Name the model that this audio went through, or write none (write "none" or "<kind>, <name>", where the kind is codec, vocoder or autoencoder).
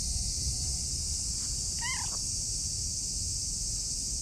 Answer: none